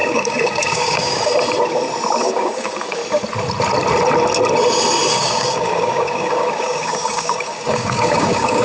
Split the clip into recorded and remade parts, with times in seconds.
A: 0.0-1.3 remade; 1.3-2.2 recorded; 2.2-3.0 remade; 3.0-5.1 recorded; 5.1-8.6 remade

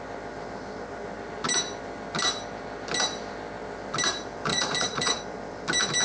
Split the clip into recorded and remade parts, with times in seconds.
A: 0.0-4.5 recorded; 4.5-5.2 remade; 5.2-6.0 recorded

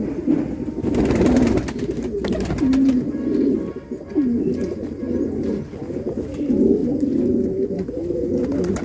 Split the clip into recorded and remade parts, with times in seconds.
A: 0.0-8.8 recorded

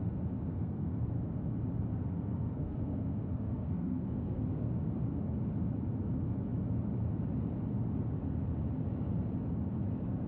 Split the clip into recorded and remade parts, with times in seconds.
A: 0.0-0.5 recorded; 0.5-1.1 remade; 1.1-1.9 recorded; 1.9-4.7 remade; 4.7-10.3 recorded

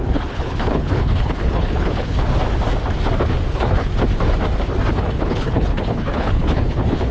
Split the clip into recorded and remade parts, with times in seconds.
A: 0.0-2.3 remade; 2.3-3.5 recorded; 3.5-3.9 remade; 3.9-4.9 recorded; 4.9-7.1 remade